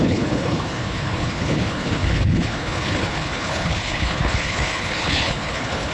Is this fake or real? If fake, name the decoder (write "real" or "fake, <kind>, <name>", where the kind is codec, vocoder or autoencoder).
fake, codec, HILCodec